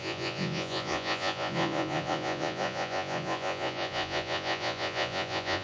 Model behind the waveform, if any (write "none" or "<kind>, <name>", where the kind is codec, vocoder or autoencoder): vocoder, Vocos